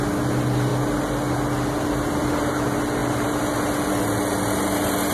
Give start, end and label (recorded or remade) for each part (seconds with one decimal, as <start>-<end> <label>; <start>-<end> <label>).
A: 0.0-5.1 recorded

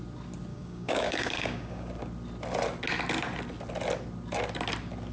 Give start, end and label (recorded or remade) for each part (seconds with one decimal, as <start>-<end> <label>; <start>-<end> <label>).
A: 0.0-0.5 recorded; 0.5-1.9 remade; 1.9-5.1 recorded

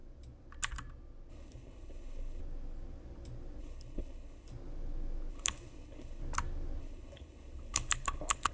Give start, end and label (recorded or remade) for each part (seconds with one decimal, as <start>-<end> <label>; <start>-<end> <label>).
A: 0.0-1.3 recorded; 1.3-2.4 remade; 2.4-3.6 recorded; 3.6-4.5 remade; 4.5-5.3 recorded; 5.3-6.2 remade; 6.2-6.8 recorded; 6.8-8.5 remade